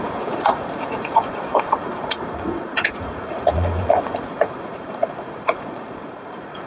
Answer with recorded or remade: remade